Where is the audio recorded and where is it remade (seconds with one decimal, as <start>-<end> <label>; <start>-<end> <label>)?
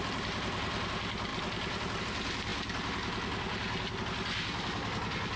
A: 0.0-5.4 recorded